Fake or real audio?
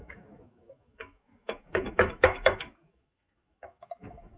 fake